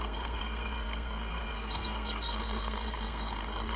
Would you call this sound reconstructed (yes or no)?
yes